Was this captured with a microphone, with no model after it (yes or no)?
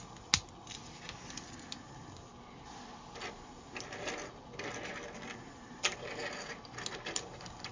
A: yes